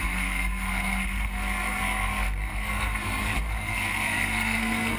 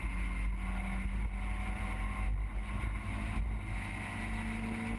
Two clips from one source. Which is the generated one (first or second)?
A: first